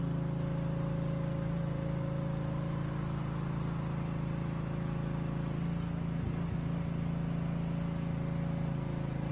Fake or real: real